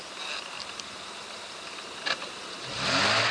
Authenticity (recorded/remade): recorded